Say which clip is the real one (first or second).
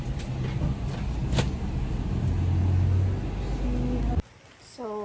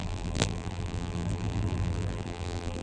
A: first